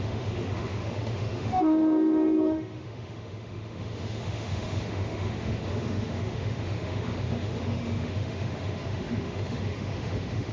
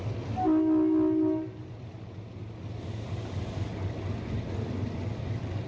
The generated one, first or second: first